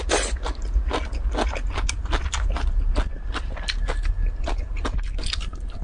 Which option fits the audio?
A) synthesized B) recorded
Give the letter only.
B